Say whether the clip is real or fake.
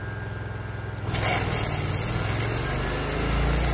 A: real